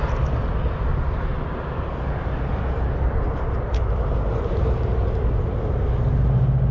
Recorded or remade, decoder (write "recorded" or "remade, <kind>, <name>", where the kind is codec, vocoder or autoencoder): recorded